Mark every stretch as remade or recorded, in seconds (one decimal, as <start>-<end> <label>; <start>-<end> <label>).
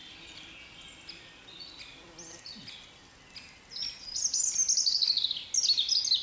0.0-6.2 recorded